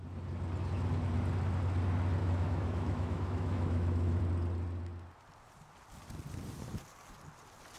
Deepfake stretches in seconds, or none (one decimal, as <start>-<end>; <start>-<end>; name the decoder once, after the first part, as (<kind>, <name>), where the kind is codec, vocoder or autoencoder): 2.2-4.2 (autoencoder, DAC-VAE)